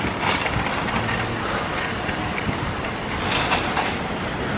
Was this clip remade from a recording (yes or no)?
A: no